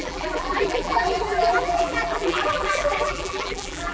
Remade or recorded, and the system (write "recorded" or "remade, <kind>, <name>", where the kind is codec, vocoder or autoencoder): remade, vocoder, BigVGAN v2